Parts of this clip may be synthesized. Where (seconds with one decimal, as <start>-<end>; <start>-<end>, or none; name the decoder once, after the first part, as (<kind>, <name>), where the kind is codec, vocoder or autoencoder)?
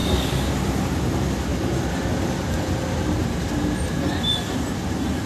0.0-0.5 (codec, DAC)